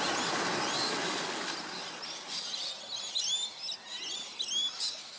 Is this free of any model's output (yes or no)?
yes